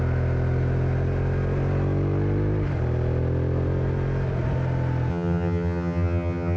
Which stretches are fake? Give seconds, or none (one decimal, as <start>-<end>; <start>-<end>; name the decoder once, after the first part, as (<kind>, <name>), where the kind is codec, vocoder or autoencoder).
5.1-6.6 (vocoder, HiFi-GAN)